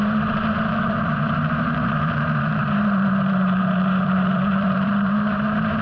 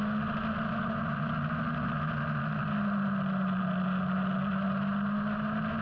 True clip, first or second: second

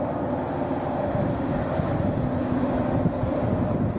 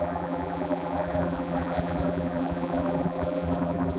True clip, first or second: first